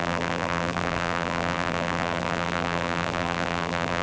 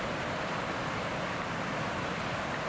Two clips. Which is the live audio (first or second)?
second